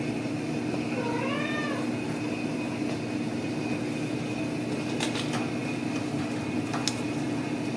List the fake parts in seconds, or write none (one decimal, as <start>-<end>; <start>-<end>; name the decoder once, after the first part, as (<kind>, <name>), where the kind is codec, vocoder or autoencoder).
none